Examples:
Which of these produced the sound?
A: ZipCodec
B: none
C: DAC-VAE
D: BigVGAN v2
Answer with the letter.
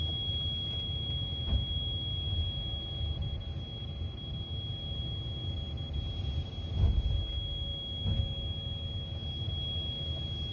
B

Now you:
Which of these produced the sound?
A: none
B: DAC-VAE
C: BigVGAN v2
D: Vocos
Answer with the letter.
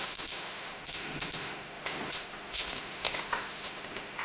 B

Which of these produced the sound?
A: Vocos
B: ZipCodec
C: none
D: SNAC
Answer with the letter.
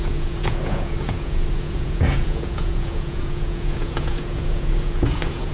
A